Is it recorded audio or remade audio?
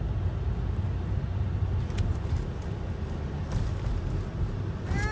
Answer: recorded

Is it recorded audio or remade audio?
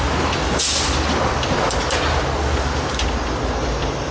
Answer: remade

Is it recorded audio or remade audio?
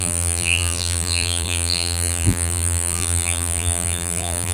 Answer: remade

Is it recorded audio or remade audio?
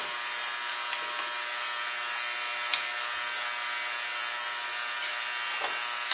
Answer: recorded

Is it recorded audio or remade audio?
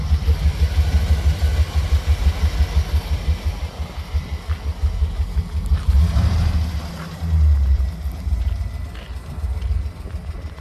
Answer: recorded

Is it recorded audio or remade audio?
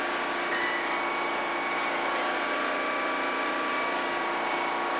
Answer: recorded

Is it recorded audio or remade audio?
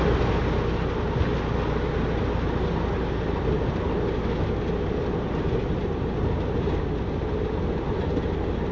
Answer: recorded